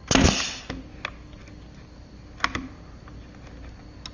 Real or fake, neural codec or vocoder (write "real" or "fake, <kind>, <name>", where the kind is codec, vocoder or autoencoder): real